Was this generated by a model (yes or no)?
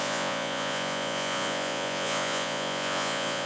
yes